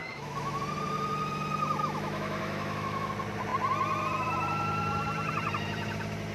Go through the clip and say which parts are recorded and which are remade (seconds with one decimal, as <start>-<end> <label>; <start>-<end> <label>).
0.0-0.6 remade; 0.6-1.8 recorded; 1.8-3.1 remade; 3.1-6.3 recorded